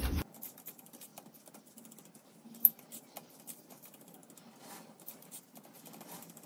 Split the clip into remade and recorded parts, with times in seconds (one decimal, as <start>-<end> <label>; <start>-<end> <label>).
0.0-1.1 remade; 1.1-3.4 recorded; 3.4-4.2 remade; 4.2-5.4 recorded; 5.4-6.5 remade